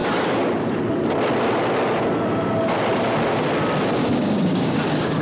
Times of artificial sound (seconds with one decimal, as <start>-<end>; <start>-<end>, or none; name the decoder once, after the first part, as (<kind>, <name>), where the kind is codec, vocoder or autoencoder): 4.0-5.2 (codec, DAC)